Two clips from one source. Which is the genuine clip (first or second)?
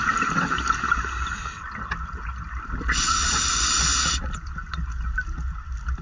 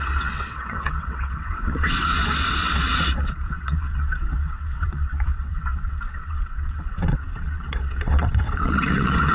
first